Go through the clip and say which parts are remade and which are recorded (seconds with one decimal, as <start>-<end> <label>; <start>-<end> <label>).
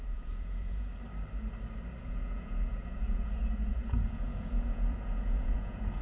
0.0-0.9 remade; 0.9-2.0 recorded; 2.0-6.0 remade